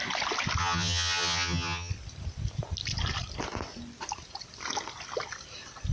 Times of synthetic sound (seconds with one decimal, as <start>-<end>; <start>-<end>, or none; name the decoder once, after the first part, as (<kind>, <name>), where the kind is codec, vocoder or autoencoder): 0.6-1.9 (vocoder, HiFi-GAN)